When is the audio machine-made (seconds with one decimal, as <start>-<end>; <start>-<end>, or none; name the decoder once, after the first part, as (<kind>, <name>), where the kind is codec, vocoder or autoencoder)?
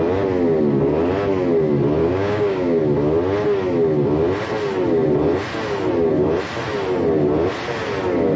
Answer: 2.0-2.8 (codec, DAC)